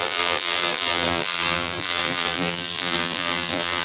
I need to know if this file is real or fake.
fake